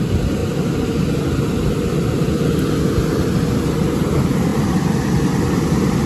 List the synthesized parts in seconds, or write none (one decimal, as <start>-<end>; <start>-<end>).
0.4-1.8; 4.5-6.1